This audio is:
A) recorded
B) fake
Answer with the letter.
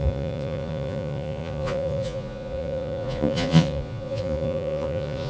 B